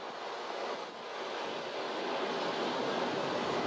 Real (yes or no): yes